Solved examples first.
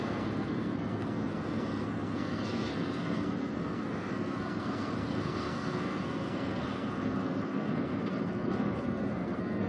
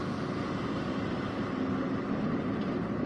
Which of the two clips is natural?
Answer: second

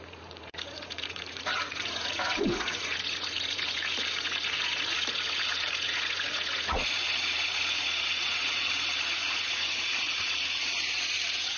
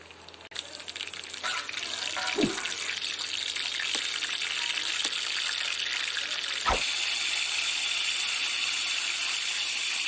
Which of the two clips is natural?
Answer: second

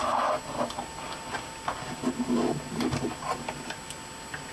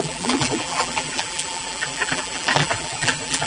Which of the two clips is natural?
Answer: first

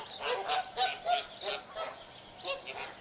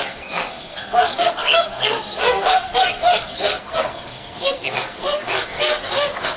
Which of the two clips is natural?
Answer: first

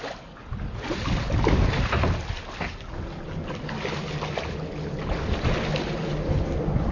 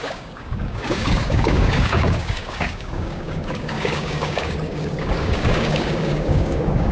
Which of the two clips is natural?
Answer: first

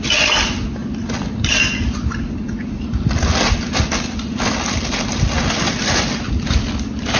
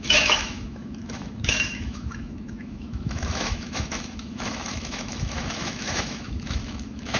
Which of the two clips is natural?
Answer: first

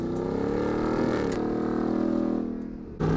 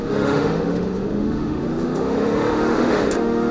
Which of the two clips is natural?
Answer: first